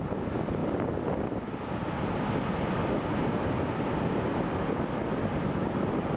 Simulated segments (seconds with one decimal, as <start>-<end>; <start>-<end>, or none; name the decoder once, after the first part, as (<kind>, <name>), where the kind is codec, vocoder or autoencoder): none